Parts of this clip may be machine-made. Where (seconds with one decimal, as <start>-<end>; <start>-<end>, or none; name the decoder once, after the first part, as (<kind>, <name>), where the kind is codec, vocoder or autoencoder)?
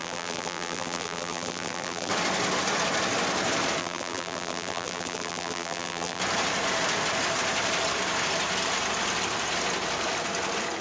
0.0-2.1 (vocoder, BigVGAN v2); 3.8-6.2